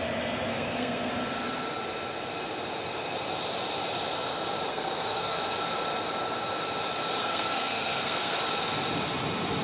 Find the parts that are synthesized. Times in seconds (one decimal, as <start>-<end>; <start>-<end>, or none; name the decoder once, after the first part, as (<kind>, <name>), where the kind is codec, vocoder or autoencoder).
0.5-1.1 (codec, SNAC); 4.7-5.4; 7.2-8.4